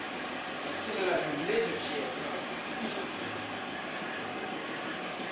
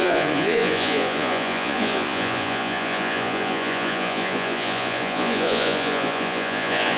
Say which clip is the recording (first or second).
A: first